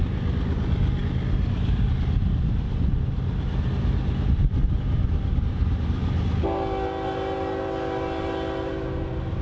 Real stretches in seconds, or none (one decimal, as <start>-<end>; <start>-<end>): 0.0-9.4